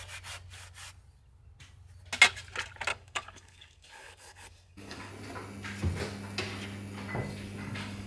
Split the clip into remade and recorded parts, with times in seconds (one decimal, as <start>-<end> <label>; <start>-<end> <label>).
0.0-2.9 recorded; 2.9-5.1 remade; 5.1-7.6 recorded; 7.6-8.1 remade